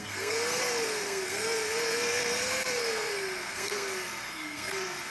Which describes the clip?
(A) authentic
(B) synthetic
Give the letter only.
B